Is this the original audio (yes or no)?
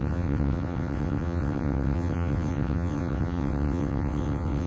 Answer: no